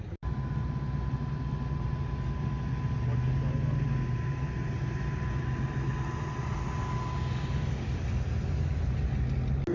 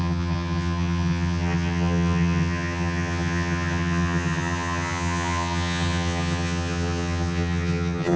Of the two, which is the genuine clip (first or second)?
first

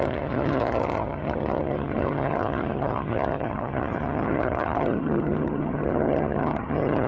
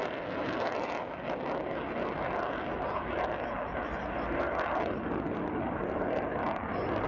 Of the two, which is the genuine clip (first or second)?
second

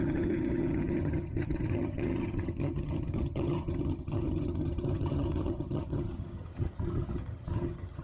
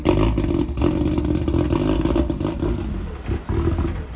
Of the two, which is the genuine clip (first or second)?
second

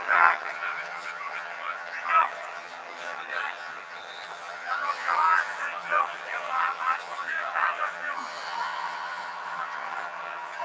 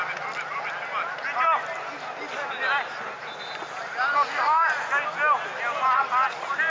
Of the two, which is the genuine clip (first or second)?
second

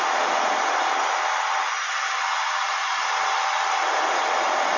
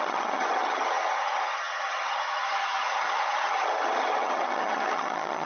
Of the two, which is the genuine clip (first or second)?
first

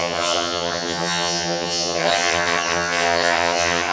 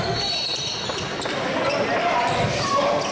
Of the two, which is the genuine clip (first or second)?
second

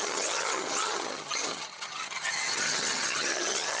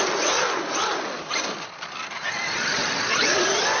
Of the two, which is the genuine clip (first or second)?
second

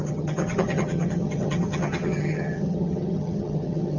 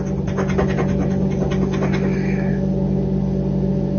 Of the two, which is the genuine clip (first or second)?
second